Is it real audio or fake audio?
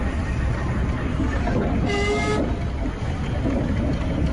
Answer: real